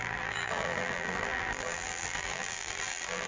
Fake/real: fake